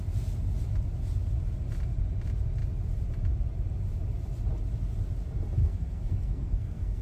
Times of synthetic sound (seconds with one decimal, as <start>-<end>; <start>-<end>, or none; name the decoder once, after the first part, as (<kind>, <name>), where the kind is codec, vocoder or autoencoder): 5.6-7.0 (codec, SNAC)